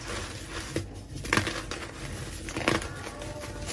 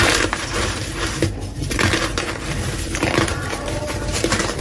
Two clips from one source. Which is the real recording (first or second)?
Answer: first